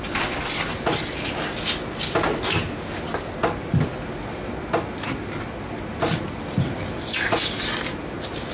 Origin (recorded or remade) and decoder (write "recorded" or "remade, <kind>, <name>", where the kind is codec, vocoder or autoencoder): recorded